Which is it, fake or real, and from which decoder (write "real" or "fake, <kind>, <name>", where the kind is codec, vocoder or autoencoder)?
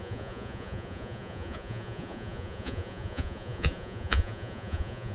fake, vocoder, Vocos